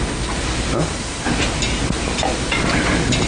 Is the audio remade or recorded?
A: recorded